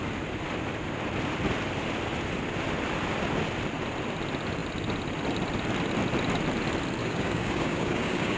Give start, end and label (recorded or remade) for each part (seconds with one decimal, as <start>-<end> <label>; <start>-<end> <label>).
0.0-7.0 recorded; 7.0-8.4 remade